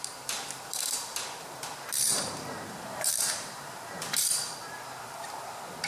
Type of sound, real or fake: fake